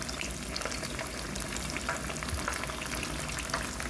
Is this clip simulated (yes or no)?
no